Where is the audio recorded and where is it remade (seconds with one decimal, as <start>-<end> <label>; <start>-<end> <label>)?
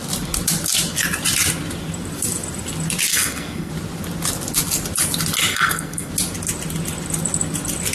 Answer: 0.0-3.1 recorded; 3.1-3.7 remade; 3.7-5.5 recorded; 5.5-6.1 remade; 6.1-7.9 recorded